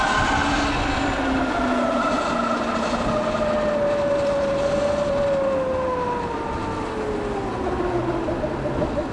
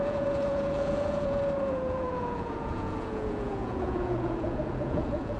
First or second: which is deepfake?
second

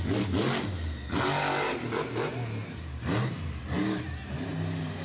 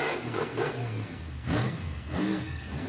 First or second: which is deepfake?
second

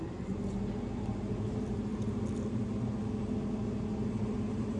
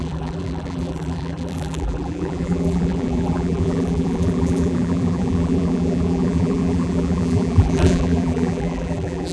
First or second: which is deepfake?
second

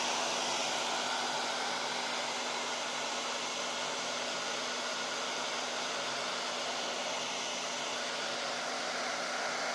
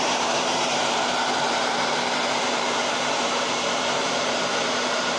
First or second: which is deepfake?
second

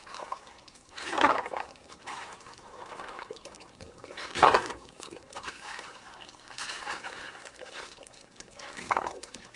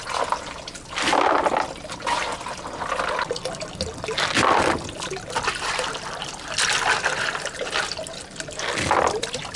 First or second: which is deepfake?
first